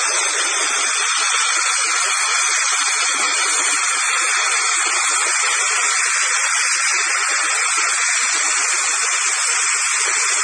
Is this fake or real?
real